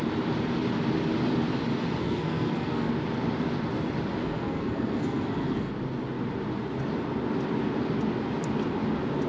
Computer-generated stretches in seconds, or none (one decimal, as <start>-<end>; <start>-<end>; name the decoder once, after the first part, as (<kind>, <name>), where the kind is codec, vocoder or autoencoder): 2.0-2.9 (codec, SNAC); 4.2-5.7